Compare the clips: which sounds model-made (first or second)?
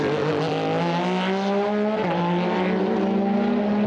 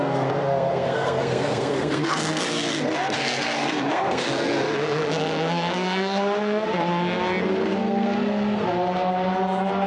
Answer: second